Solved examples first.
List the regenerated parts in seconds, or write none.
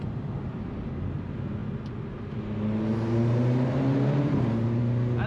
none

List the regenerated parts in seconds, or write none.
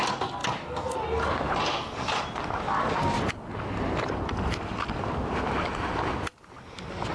none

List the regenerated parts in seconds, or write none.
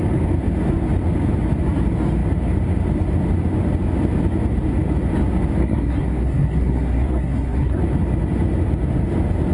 5.6-7.8 (codec, SNAC)